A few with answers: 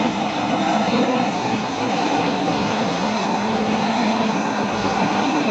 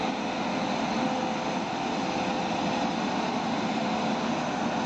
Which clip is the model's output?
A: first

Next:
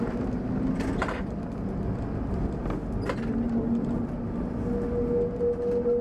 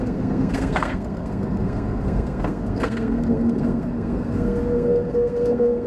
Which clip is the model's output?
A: second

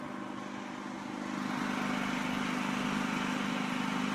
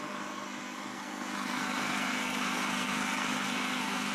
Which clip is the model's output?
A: second